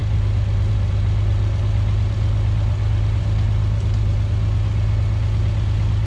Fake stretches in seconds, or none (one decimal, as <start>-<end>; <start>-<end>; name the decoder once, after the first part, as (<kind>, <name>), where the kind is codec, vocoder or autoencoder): none